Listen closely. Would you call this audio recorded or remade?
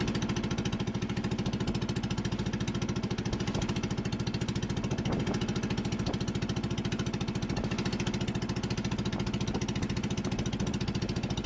recorded